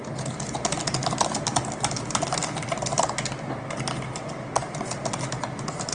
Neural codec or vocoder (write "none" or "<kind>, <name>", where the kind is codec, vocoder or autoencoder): none